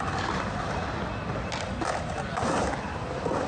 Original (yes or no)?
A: yes